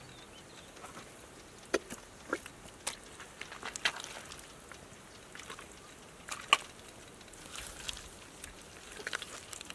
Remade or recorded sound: recorded